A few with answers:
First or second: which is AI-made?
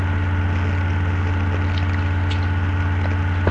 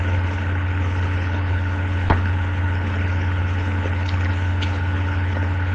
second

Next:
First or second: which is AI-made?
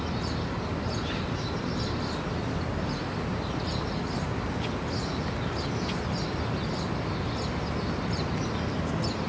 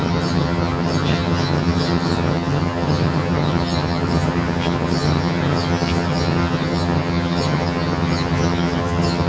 second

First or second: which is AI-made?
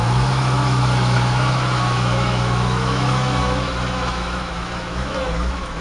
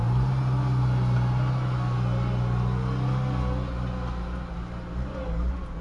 first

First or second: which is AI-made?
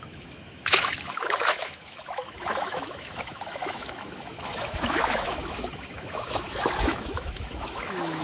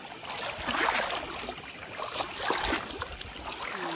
first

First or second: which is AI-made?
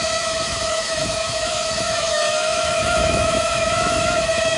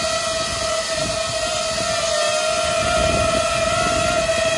first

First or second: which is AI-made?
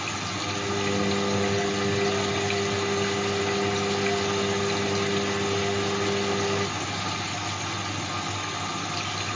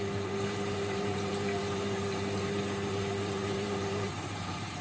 second